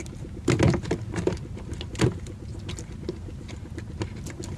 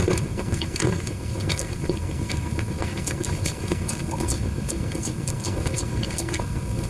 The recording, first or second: first